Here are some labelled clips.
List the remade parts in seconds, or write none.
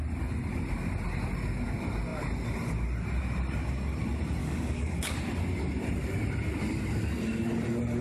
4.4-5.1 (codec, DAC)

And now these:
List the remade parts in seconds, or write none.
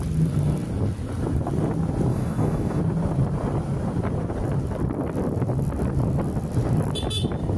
2.1-2.8 (codec, DAC)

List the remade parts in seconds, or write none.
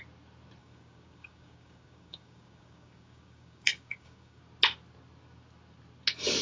0.6-4.4 (codec, DAC)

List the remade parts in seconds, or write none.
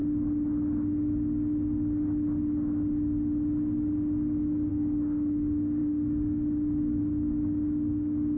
4.7-8.4 (codec, DAC)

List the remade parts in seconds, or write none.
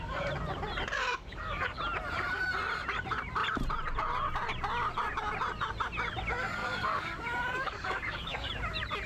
1.1-1.8 (codec, DAC); 6.6-8.5